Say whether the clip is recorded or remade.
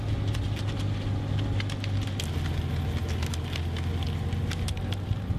recorded